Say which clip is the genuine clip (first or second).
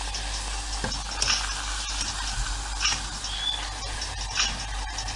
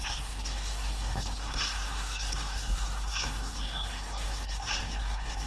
first